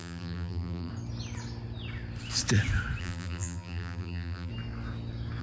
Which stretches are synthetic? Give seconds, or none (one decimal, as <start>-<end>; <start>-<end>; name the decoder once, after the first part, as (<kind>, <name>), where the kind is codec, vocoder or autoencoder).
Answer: 0.0-0.9 (vocoder, BigVGAN v2); 3.0-4.5